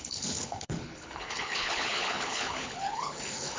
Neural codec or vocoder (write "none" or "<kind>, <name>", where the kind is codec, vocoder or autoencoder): codec, HILCodec